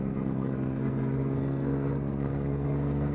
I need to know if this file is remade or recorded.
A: remade